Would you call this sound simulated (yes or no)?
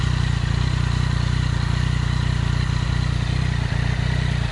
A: no